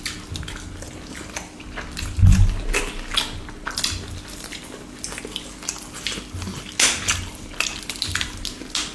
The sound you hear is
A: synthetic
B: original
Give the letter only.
B